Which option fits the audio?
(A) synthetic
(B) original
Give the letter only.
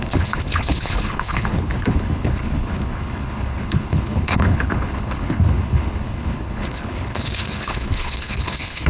A